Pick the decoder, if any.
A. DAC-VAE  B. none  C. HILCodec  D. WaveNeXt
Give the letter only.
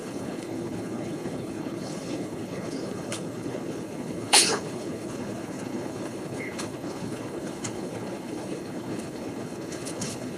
C